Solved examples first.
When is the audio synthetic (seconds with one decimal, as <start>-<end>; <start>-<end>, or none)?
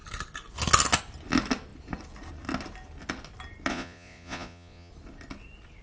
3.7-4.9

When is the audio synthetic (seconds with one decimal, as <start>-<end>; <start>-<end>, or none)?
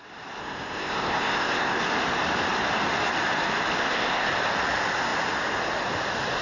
0.4-1.8; 3.8-4.3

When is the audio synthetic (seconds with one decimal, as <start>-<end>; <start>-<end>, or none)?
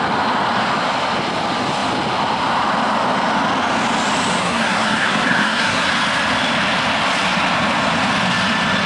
4.4-5.9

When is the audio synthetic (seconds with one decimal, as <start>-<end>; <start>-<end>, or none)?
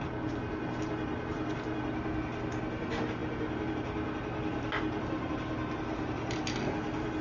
none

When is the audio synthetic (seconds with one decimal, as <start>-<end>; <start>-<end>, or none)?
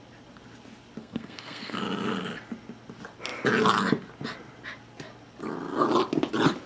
1.0-1.8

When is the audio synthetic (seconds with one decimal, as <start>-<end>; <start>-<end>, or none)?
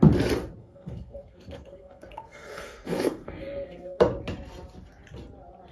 0.6-4.0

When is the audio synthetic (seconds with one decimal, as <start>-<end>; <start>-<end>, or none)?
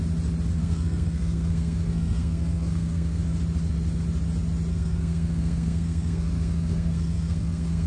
0.6-3.2; 4.7-7.9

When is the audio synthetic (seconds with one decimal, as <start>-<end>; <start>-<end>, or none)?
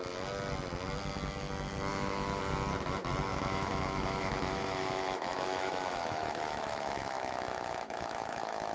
1.9-2.4; 3.3-8.7